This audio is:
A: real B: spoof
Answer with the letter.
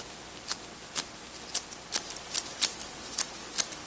A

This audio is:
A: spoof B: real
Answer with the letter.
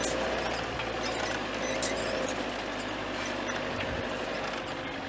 B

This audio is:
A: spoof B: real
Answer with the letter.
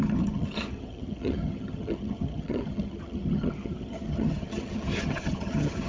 A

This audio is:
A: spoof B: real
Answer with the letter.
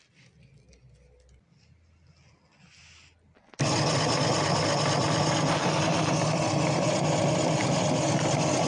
B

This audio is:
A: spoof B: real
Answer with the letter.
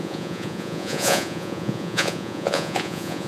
A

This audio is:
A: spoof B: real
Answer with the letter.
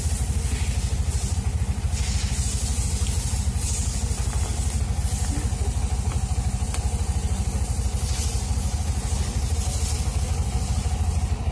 B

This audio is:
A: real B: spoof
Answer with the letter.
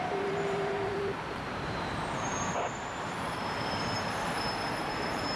B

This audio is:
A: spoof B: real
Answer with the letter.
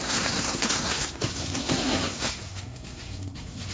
A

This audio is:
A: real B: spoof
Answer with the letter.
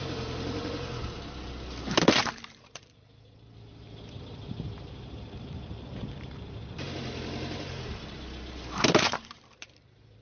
B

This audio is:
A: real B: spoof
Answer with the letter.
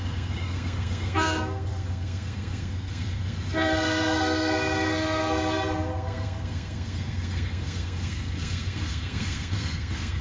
B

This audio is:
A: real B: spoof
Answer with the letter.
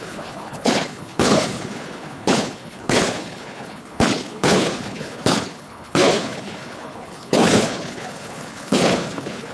B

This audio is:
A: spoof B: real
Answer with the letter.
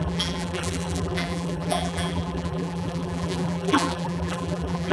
A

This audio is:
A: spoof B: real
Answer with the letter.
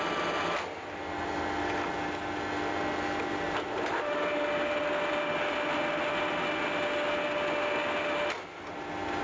B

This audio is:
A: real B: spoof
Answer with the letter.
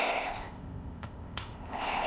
B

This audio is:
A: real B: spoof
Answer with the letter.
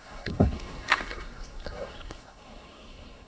B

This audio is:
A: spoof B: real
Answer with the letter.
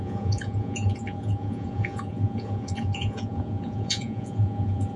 A